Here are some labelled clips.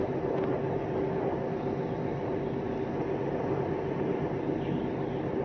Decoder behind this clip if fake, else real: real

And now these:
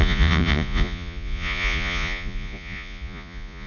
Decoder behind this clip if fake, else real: fake, vocoder, Vocos